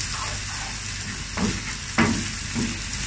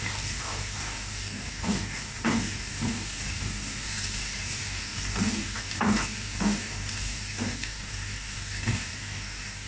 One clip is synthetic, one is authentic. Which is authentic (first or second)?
first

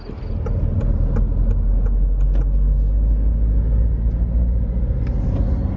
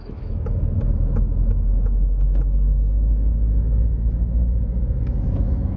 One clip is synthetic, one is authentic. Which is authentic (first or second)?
first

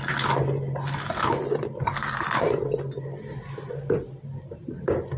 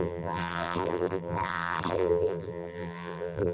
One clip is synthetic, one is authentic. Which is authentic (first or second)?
first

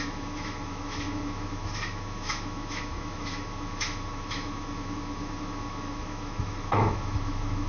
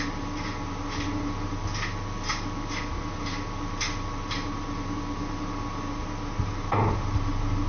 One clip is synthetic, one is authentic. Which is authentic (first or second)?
second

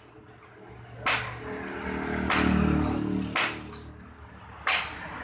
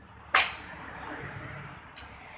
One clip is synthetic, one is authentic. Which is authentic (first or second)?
first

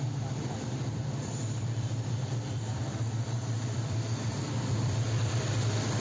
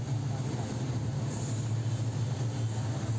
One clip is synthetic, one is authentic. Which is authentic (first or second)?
second